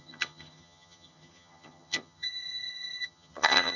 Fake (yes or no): yes